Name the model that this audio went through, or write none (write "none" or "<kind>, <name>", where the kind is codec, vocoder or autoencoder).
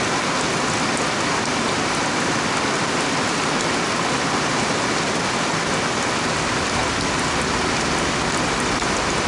none